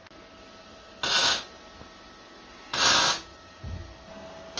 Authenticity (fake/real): real